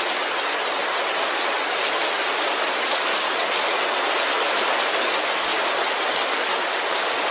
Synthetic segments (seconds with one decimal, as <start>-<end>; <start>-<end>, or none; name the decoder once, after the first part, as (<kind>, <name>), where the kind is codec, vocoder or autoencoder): none